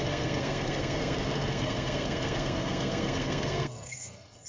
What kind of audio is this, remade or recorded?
remade